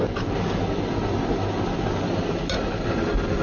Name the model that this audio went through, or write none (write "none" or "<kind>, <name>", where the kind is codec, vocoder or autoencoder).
none